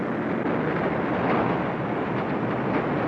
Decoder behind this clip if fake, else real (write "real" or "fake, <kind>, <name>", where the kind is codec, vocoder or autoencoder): real